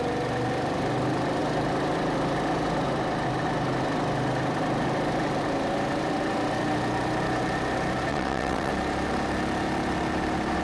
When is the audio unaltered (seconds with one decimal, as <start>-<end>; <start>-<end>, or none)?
0.0-8.1; 8.7-10.6